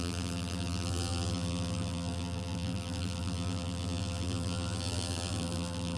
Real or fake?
fake